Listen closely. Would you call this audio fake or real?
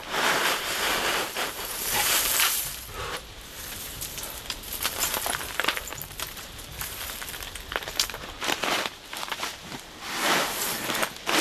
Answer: fake